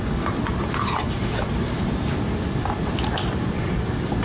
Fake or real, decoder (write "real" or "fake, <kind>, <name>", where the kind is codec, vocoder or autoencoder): fake, vocoder, BigVGAN v2